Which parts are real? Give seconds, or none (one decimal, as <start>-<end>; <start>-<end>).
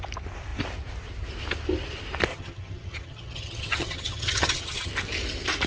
0.0-2.3; 4.9-5.7